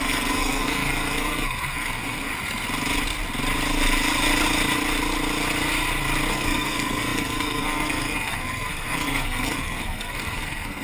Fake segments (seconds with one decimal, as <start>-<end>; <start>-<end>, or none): 0.0-2.3; 6.3-10.8